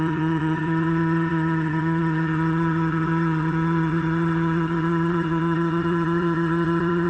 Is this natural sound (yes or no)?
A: no